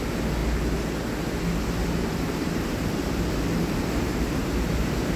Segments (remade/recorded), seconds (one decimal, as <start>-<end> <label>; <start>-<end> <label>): 0.0-2.0 recorded; 2.0-5.2 remade